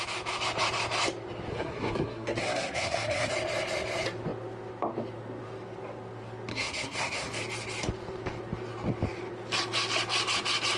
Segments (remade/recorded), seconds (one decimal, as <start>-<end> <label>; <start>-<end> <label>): 0.0-1.5 recorded; 1.5-3.3 remade; 3.3-6.5 recorded; 6.5-7.4 remade; 7.4-10.8 recorded